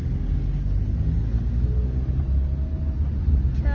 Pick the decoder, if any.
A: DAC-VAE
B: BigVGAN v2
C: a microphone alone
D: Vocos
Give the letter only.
C